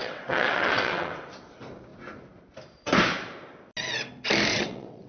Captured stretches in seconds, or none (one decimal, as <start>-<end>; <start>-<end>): 1.2-4.5